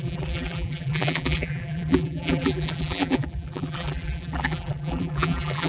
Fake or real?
fake